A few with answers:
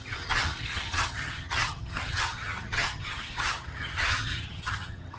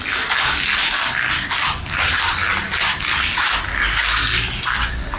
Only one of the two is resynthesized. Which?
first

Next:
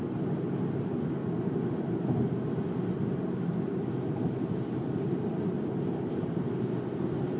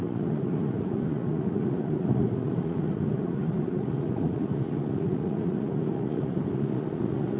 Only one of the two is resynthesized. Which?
second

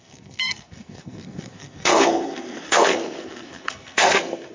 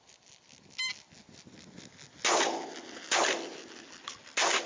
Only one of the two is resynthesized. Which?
first